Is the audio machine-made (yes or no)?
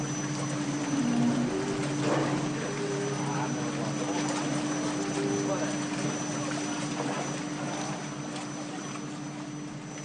no